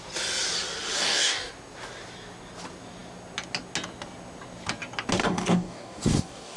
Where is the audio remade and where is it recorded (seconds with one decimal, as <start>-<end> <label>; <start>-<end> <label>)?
0.0-1.0 recorded; 1.0-1.5 remade; 1.5-5.2 recorded; 5.2-6.6 remade